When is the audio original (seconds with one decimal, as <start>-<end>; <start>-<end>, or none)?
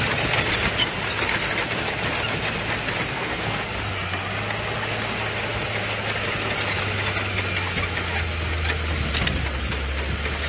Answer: 0.0-3.1; 3.6-10.5